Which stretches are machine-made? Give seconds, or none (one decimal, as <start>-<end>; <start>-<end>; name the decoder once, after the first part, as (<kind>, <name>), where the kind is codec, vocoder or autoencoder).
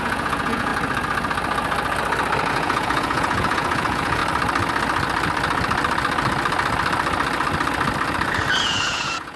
0.0-0.7 (vocoder, Vocos); 2.5-4.2; 8.6-9.4